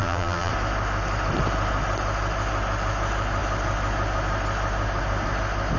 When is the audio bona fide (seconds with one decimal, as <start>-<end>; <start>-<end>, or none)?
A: 0.5-5.8